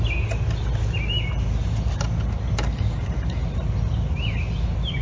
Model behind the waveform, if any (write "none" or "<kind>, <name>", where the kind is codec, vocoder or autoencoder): none